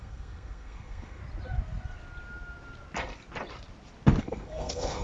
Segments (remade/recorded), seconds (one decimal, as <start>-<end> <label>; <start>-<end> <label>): 0.0-1.2 remade; 1.2-4.2 recorded; 4.2-5.0 remade